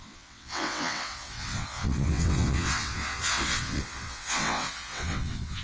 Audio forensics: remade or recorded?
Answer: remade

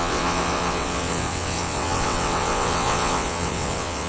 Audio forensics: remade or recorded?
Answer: remade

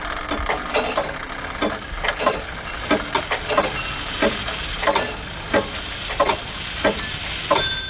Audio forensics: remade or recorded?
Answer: recorded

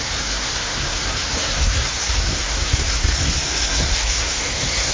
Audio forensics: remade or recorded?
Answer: remade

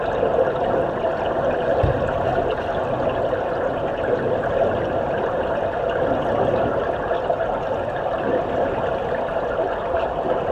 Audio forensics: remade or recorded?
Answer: recorded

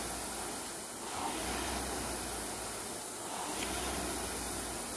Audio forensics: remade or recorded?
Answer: recorded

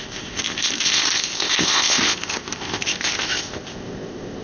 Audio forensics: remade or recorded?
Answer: remade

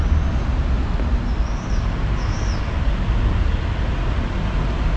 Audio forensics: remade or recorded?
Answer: recorded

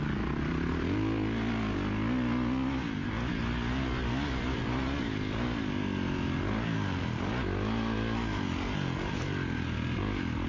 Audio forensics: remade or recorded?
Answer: recorded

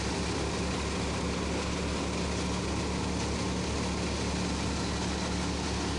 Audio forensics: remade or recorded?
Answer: recorded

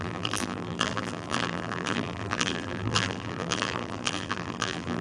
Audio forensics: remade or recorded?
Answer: remade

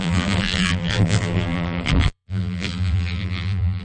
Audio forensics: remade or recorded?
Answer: remade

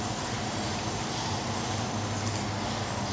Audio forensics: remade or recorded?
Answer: recorded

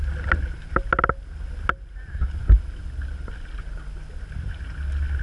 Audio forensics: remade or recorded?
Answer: recorded